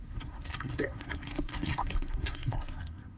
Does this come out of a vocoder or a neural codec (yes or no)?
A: yes